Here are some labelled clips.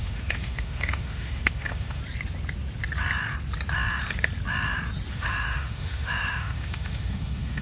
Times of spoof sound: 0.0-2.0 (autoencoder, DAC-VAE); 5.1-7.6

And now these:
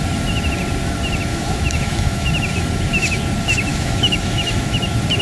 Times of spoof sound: 1.3-2.5 (autoencoder, DAC-VAE); 3.7-4.8

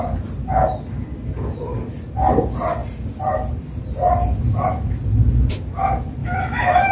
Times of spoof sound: 6.2-6.9 (autoencoder, DAC-VAE)

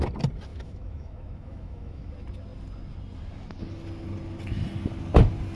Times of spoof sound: 0.5-2.1 (autoencoder, DAC-VAE)

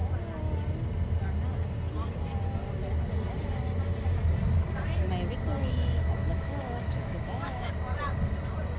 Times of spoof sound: 5.6-7.7 (autoencoder, DAC-VAE)

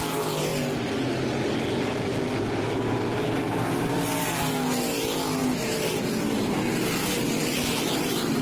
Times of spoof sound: none

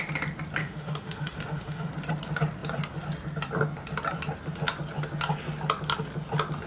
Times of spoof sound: 0.6-1.9 (autoencoder, DAC-VAE)

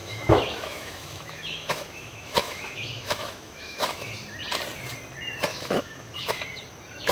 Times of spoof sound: 0.0-4.1 (autoencoder, DAC-VAE); 5.5-6.3